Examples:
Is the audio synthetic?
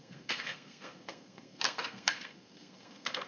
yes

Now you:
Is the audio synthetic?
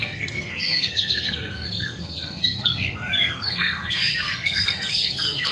yes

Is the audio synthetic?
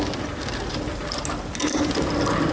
no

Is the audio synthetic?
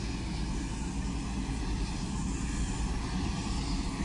no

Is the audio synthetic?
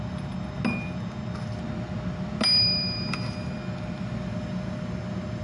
no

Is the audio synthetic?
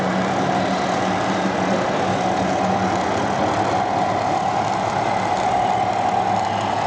no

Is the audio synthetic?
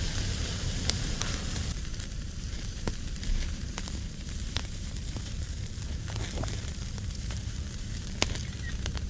yes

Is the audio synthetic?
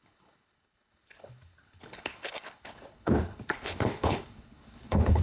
yes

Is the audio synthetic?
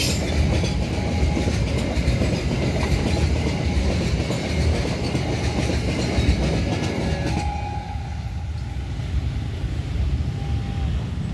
no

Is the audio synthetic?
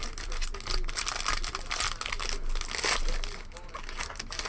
no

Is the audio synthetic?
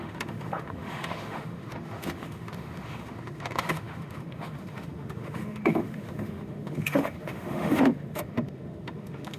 yes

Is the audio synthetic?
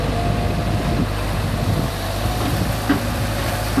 no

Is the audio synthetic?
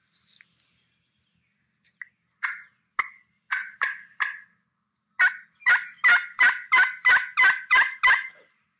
no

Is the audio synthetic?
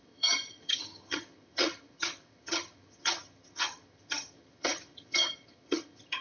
yes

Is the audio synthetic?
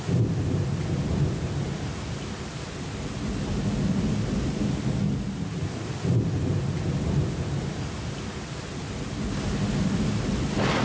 no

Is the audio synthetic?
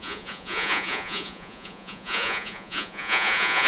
yes